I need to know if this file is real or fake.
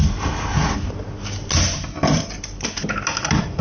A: real